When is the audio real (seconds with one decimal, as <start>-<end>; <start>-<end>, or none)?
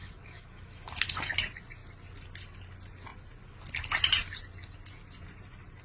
1.0-5.8